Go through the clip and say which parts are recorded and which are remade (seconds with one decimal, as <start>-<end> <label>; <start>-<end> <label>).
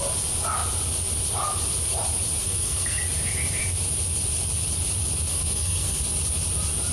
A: 0.0-2.4 recorded; 2.4-3.0 remade; 3.0-5.3 recorded; 5.3-6.0 remade; 6.0-6.9 recorded